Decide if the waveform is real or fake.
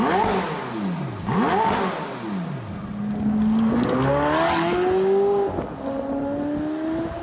real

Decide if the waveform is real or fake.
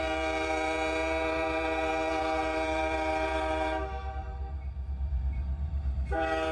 fake